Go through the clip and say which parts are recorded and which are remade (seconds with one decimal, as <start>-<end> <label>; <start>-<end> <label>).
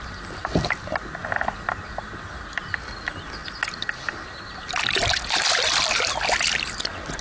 0.0-7.2 recorded